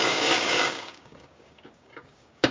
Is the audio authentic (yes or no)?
no